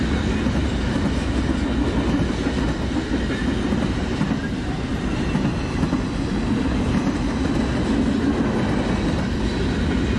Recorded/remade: recorded